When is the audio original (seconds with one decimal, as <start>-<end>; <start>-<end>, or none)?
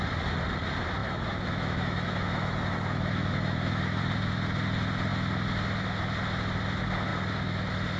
0.0-1.0; 4.0-8.0